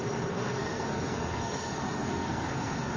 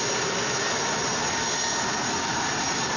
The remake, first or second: first